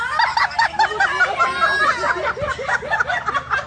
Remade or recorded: recorded